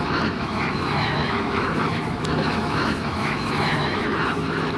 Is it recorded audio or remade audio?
remade